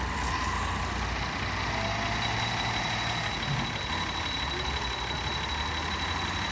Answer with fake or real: real